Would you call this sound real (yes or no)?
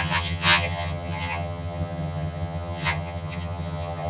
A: no